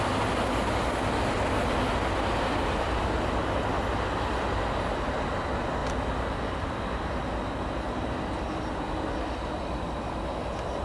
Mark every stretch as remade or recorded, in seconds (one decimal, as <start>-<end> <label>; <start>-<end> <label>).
0.0-10.8 recorded